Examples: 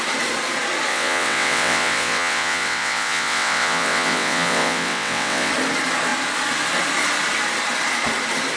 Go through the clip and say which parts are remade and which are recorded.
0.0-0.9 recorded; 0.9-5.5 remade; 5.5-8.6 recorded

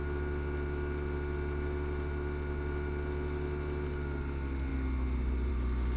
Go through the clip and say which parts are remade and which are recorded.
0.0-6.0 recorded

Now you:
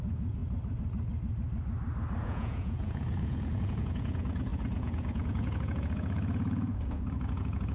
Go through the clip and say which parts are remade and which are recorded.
0.0-0.4 remade; 0.4-2.2 recorded; 2.2-7.7 remade